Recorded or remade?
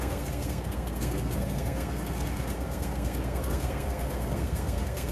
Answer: remade